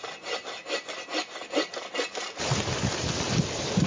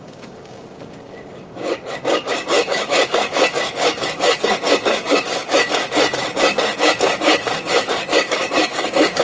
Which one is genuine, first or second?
first